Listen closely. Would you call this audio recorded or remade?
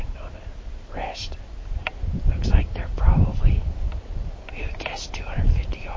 remade